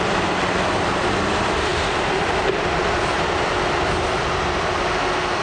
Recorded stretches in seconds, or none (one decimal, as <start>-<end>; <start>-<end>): 0.0-1.7; 4.9-5.4